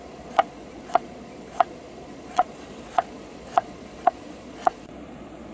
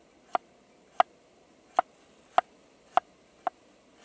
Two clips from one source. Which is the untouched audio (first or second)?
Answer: second